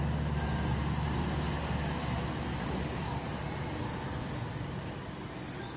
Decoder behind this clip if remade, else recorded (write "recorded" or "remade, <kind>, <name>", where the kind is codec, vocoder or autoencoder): recorded